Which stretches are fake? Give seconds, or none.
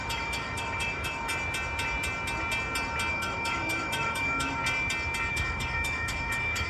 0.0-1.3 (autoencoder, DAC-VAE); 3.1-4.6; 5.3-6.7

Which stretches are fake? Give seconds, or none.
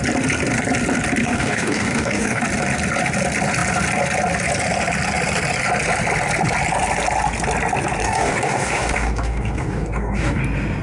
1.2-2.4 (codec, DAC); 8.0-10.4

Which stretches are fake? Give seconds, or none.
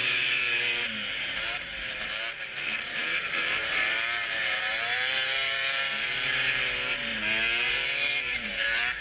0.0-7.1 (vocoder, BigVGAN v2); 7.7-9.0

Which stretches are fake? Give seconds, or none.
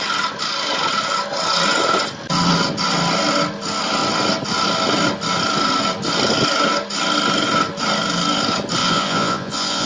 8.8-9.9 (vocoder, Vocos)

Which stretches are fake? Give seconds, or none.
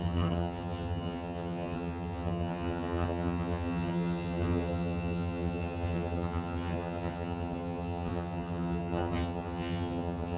0.0-10.4 (vocoder, HiFi-GAN)